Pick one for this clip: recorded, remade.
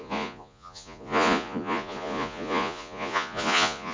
remade